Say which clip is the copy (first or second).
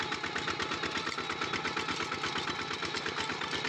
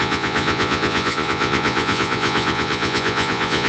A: second